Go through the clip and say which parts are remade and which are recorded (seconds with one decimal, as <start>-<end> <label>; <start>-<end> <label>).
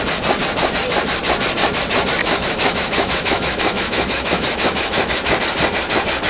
0.0-2.2 recorded; 2.2-5.4 remade; 5.4-6.3 recorded